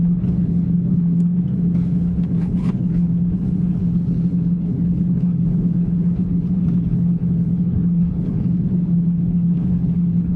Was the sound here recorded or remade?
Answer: remade